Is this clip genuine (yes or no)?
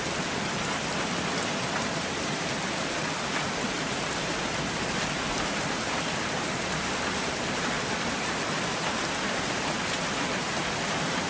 no